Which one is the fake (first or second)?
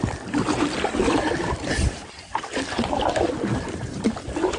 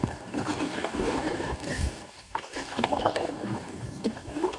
second